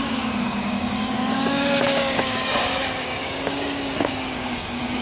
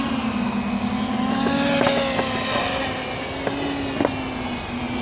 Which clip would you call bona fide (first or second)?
second